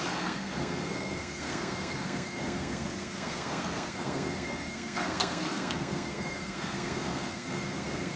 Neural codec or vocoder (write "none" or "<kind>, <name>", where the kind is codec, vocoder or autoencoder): codec, SNAC